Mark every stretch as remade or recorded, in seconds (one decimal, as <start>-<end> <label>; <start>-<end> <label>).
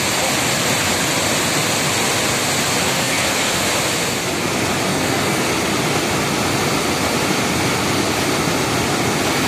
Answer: 0.0-2.8 recorded; 2.8-3.6 remade; 3.6-4.9 recorded; 4.9-5.5 remade; 5.5-9.5 recorded